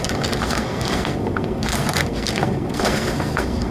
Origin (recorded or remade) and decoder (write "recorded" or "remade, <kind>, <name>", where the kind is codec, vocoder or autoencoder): remade, codec, SNAC